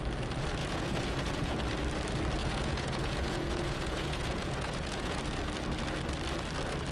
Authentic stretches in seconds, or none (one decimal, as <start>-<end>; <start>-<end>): 0.0-0.6; 1.6-2.4; 5.2-6.9